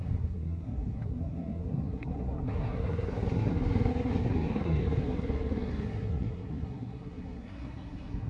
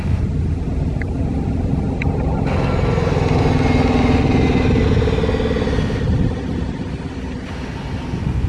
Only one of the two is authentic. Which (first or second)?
second